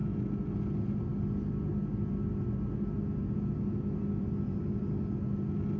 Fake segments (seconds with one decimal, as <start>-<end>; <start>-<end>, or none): 0.0-0.5; 4.5-5.0